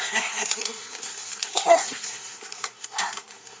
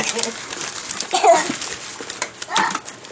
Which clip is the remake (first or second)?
first